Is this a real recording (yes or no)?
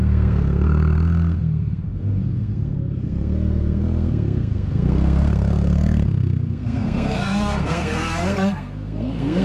no